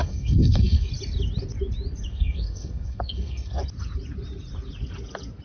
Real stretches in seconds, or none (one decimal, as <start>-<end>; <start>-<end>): 0.9-2.1; 3.6-5.4